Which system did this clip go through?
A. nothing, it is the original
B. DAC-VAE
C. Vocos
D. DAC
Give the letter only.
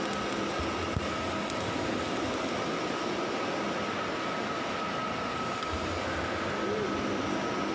A